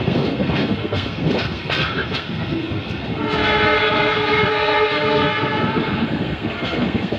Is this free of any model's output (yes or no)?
no